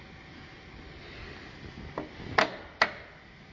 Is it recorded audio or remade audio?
recorded